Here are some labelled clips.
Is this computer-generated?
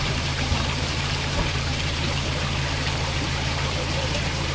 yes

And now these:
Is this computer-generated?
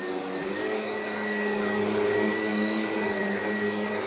yes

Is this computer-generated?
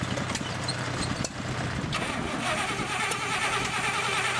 no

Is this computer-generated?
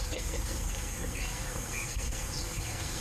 yes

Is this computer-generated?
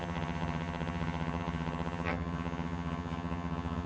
yes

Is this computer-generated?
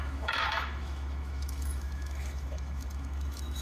yes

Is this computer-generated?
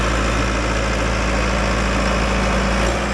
no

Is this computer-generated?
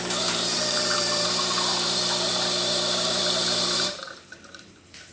yes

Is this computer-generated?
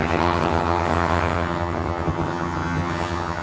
yes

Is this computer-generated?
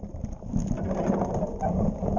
no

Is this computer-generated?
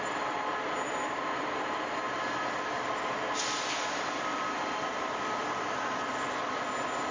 no